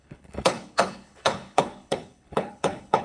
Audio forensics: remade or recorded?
remade